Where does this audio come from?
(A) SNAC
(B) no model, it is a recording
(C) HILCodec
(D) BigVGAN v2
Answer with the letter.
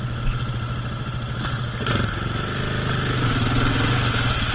B